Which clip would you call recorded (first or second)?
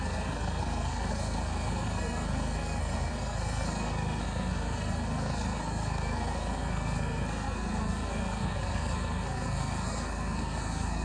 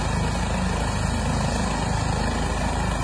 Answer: second